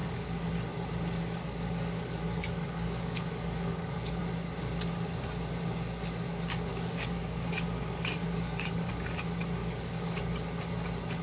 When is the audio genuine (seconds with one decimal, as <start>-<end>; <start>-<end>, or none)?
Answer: 0.5-1.2; 4.2-6.7; 8.9-9.6; 10.2-11.2

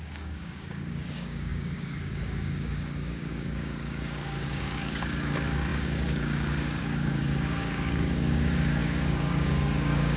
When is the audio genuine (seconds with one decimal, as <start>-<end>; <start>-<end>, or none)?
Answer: none

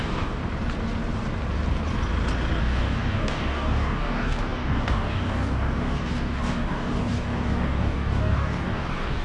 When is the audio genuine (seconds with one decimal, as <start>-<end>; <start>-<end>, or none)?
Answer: 0.4-2.6

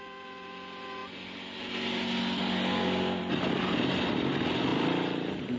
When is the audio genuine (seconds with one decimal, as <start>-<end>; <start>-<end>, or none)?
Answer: 0.0-2.7; 3.2-5.6

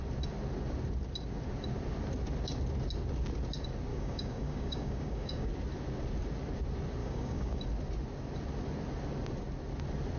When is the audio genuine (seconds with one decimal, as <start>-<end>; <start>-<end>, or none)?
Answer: 0.0-3.9; 5.5-7.0; 7.6-10.2